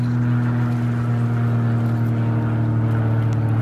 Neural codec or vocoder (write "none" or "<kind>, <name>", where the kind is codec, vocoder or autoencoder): none